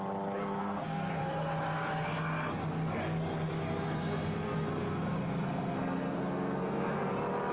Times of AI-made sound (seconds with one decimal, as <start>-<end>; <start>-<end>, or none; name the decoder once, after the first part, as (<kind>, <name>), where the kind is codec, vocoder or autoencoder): 0.6-1.2 (codec, SNAC); 3.6-7.1